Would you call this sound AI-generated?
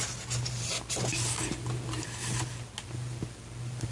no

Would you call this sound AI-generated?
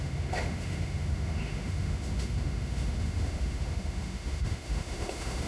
yes